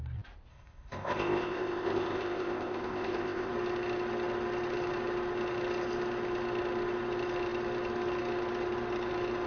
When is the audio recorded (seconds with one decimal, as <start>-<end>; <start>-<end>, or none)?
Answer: 0.0-0.5; 3.5-9.5